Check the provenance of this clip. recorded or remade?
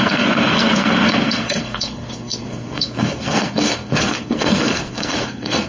remade